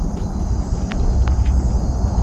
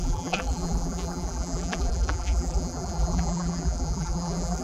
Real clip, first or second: first